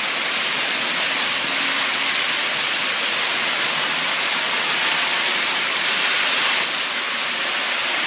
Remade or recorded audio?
recorded